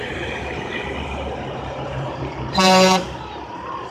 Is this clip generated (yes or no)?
yes